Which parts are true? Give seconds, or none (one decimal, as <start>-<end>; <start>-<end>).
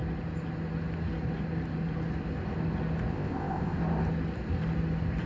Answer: 0.0-3.1; 3.8-5.3